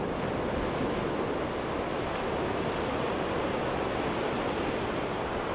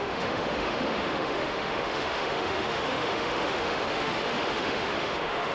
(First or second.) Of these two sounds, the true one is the first